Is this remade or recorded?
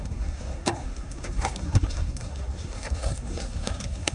remade